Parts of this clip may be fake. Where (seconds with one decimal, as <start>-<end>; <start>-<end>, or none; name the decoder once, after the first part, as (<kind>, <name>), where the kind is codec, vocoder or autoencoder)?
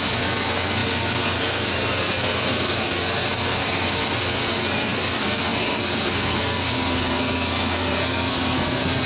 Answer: 0.0-9.1 (codec, SNAC)